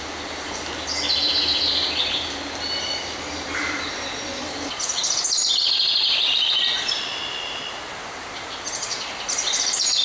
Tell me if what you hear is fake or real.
real